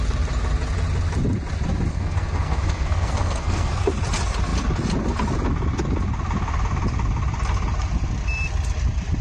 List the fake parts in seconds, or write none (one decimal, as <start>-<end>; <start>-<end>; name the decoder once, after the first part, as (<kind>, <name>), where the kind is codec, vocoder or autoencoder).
1.9-3.8 (codec, SNAC)